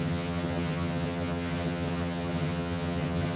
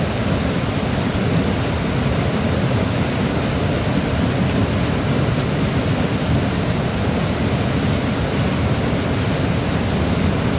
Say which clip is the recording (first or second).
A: second